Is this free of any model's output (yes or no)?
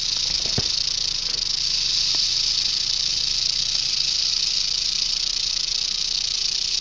yes